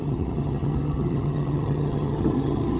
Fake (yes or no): yes